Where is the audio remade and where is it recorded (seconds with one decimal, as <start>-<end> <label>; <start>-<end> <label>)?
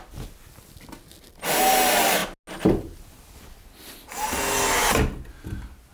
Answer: 0.0-5.9 recorded